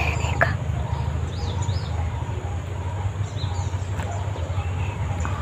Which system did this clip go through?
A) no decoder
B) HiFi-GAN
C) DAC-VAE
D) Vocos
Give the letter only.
A